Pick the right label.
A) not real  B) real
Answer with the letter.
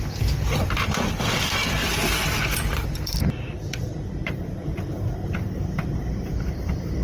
A